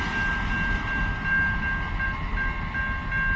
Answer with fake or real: real